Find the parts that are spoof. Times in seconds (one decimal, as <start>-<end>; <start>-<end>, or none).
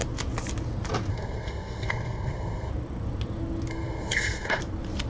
1.1-2.7; 3.7-4.6